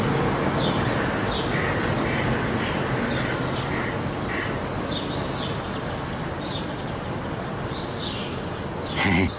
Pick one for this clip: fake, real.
real